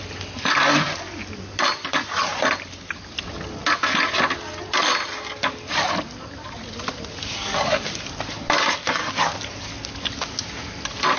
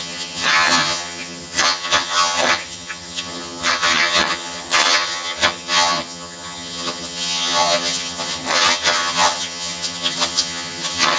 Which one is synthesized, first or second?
second